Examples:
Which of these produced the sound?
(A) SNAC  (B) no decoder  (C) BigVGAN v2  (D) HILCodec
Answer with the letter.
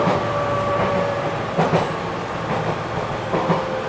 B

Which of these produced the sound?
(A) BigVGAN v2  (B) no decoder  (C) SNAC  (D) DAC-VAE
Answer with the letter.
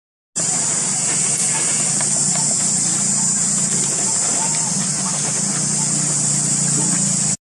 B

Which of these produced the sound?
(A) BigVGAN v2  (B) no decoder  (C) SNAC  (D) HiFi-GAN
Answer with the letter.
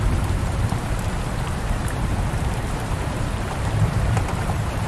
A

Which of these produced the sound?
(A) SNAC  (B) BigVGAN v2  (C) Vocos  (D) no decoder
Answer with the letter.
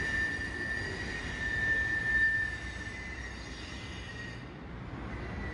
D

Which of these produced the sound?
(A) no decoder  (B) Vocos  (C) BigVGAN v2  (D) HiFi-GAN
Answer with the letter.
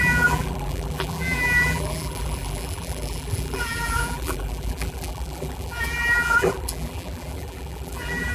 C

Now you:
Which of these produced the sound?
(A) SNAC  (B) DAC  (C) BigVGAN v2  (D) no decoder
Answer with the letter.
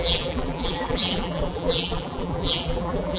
C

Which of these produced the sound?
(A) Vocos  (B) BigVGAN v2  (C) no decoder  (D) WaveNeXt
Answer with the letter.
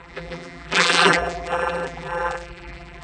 B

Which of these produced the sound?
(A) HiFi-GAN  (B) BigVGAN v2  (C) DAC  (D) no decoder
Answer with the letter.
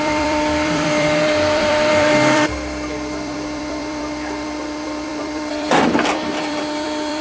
B